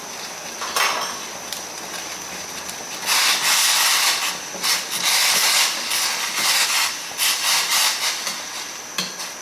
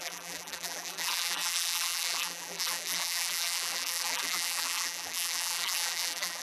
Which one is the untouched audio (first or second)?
first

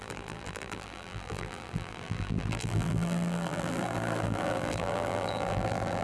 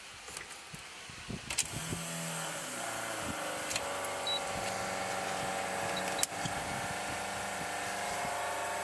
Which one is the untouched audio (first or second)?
second